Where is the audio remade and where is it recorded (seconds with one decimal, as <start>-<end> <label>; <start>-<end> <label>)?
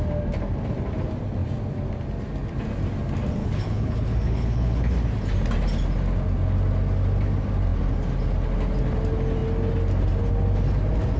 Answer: 0.0-3.4 recorded; 3.4-4.9 remade; 4.9-11.2 recorded